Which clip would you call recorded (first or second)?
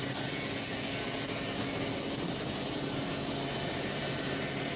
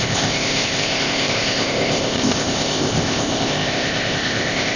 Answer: first